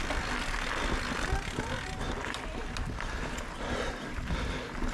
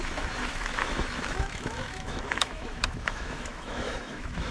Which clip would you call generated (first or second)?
second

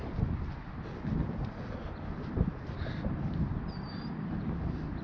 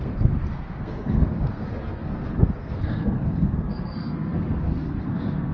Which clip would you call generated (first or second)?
second